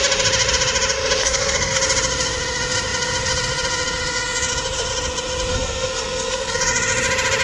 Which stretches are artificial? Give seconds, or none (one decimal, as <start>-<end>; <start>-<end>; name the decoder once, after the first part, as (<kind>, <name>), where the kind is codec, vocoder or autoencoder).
1.2-1.8 (codec, SNAC); 5.5-6.6